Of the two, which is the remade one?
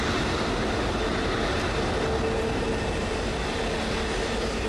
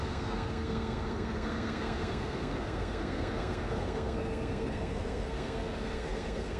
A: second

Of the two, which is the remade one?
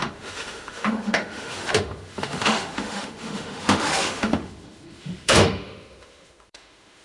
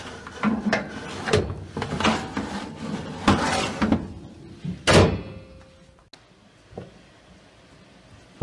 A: first